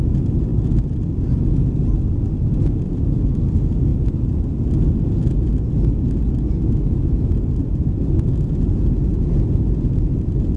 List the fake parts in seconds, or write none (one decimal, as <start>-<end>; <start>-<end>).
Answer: none